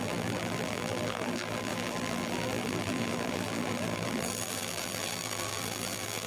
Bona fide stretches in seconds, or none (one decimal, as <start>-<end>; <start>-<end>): none